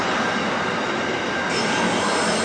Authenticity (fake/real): real